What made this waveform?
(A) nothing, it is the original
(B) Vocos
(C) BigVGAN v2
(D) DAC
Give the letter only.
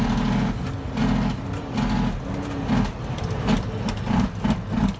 A